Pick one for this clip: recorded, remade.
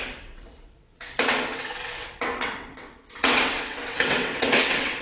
remade